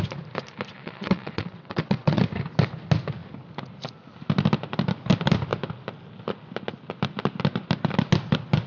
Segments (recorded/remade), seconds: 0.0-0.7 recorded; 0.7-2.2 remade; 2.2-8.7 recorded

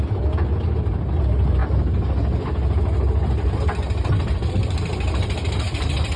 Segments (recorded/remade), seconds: 0.0-6.2 recorded

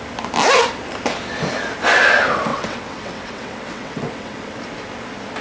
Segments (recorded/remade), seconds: 0.0-2.5 recorded; 2.5-4.6 remade; 4.6-5.4 recorded

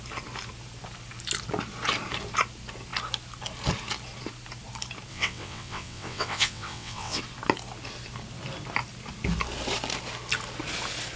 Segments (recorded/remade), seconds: 0.0-5.1 recorded; 5.1-7.2 remade; 7.2-11.2 recorded

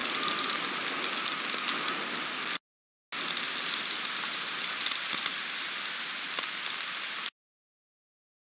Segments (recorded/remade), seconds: 0.0-8.4 recorded

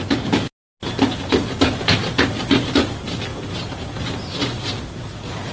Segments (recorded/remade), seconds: 0.0-5.5 recorded